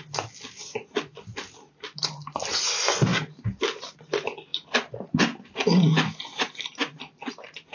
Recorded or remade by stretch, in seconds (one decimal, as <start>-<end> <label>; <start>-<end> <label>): 0.0-7.7 recorded